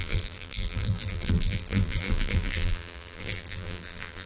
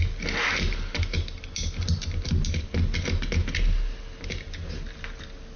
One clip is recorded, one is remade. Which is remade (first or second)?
first